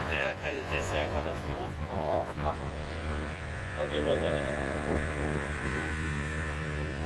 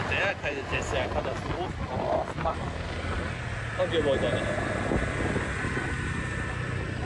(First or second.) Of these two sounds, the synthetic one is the first